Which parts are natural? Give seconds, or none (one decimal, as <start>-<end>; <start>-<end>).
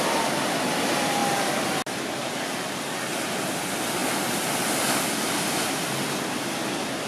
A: 0.0-7.1